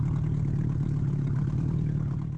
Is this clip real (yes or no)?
yes